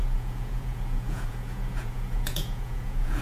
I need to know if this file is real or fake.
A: fake